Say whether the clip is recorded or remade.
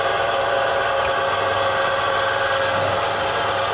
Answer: recorded